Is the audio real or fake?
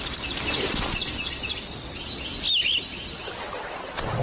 real